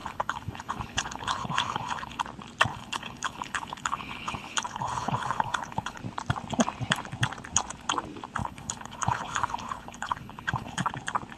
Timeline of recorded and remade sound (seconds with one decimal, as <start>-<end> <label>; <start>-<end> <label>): 0.0-2.2 remade; 2.2-2.7 recorded; 2.7-6.0 remade; 6.0-8.4 recorded; 8.4-10.9 remade; 10.9-11.4 recorded